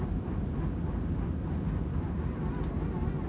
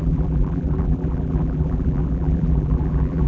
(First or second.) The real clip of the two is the first